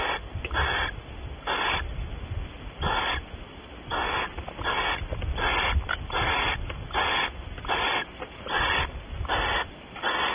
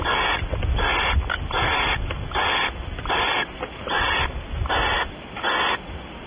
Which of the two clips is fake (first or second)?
first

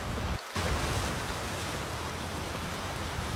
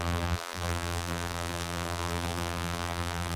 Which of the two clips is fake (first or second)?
second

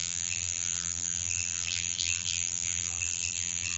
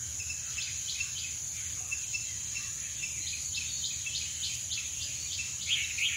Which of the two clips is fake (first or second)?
first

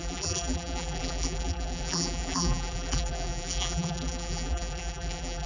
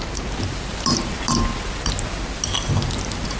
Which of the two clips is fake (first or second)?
first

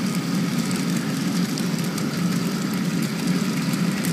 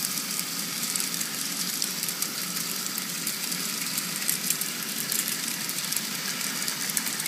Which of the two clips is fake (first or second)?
second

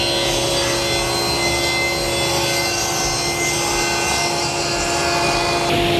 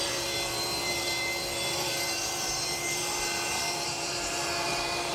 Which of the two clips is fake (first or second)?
second